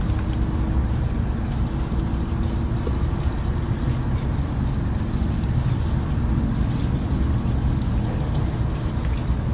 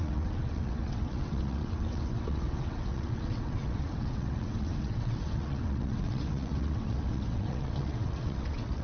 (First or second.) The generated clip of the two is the second